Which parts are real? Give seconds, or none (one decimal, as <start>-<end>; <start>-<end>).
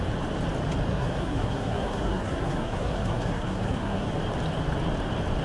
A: 0.0-0.9; 4.1-5.4